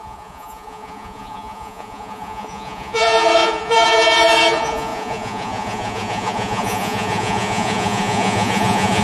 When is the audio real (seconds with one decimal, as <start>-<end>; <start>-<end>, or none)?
none